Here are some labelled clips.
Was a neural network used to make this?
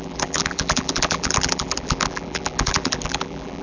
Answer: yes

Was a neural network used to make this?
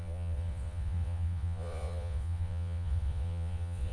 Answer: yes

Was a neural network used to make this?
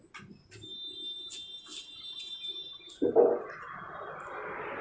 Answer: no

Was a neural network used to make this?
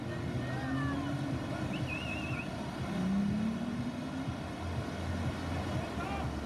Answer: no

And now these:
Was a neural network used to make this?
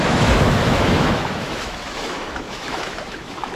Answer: yes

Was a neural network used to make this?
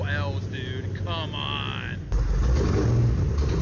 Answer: no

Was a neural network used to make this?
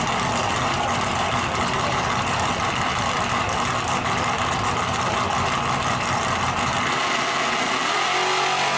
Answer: no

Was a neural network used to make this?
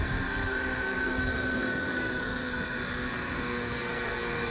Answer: yes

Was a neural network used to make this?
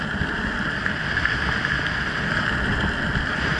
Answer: no